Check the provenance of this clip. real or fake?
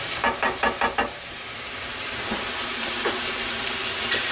fake